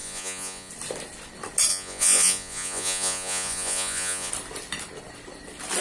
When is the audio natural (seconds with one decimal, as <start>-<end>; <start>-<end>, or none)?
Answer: 0.7-1.7; 4.3-5.8